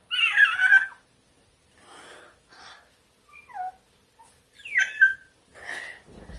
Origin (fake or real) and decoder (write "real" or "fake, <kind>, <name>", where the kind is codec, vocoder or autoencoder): real